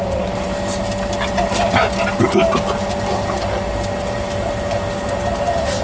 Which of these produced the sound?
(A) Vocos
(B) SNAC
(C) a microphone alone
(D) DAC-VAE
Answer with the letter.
C